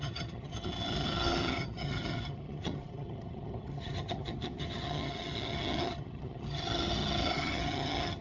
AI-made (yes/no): yes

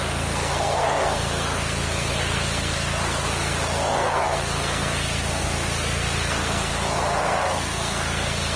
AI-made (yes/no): yes